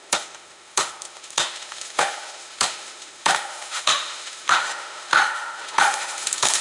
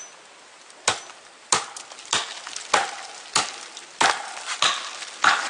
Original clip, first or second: second